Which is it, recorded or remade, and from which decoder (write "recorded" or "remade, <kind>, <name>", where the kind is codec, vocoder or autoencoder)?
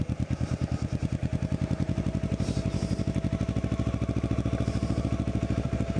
recorded